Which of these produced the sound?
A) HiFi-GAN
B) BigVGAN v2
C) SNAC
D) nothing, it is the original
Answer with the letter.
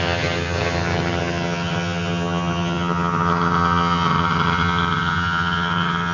A